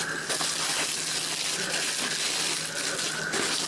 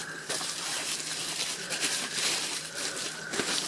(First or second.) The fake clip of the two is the second